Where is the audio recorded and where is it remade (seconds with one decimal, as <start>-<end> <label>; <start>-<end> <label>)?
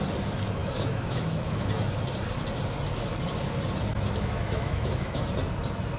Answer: 0.0-0.6 recorded; 0.6-2.0 remade; 2.0-3.9 recorded; 3.9-5.2 remade; 5.2-6.0 recorded